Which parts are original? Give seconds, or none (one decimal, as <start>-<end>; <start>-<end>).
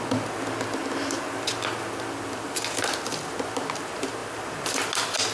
0.0-5.3